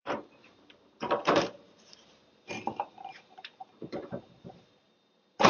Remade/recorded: remade